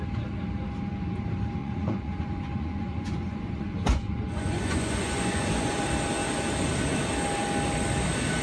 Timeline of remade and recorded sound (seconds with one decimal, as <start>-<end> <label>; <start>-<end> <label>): 0.0-1.6 recorded; 1.6-5.8 remade; 5.8-8.4 recorded